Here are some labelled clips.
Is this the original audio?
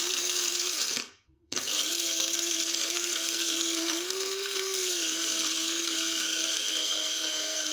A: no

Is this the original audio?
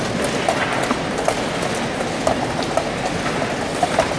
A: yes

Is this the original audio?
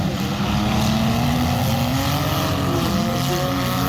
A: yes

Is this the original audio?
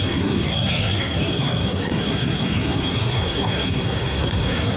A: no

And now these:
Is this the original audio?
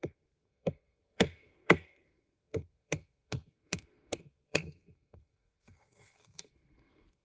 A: no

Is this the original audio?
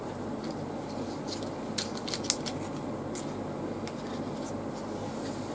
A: yes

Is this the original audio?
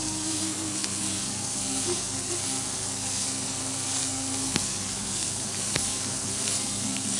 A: no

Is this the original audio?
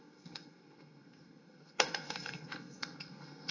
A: no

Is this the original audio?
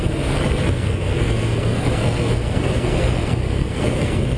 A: no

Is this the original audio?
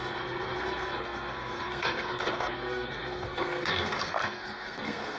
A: no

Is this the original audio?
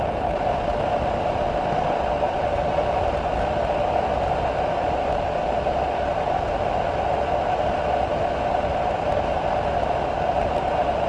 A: yes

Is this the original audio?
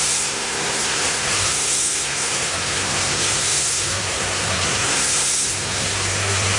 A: no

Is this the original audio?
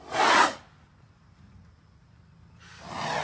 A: yes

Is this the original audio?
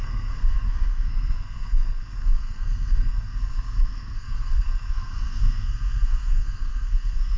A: no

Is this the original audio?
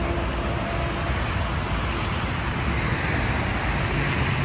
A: yes